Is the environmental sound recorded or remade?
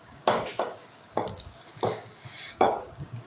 remade